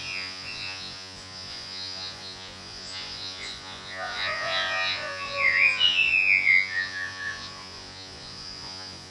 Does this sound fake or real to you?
fake